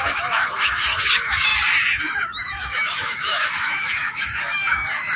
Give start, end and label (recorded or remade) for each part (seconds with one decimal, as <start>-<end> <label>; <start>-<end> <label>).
0.0-1.5 remade; 1.5-2.0 recorded; 2.0-5.2 remade